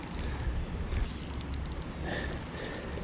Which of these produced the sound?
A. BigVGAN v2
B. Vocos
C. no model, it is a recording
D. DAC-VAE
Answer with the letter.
C